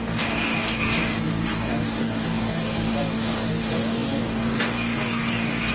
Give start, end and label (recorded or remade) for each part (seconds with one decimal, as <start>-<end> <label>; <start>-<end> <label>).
0.0-5.7 remade